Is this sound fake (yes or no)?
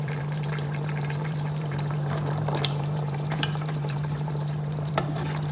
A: yes